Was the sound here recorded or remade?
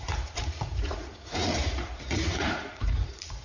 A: remade